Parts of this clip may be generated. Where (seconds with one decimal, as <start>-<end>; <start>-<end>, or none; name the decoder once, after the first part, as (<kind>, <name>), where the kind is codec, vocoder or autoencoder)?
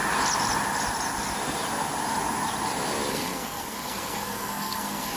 3.1-5.2 (codec, SNAC)